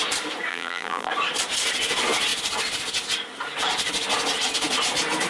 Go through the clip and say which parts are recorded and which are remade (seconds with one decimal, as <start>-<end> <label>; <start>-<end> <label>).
0.0-0.5 recorded; 0.5-1.1 remade; 1.1-5.3 recorded